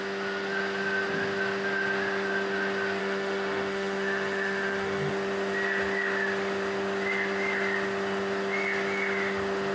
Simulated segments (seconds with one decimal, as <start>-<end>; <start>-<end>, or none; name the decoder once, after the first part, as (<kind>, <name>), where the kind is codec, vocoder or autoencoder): 3.0-5.1 (autoencoder, DAC-VAE)